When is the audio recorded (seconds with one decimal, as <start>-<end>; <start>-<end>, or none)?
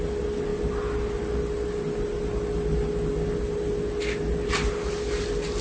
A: 0.0-5.6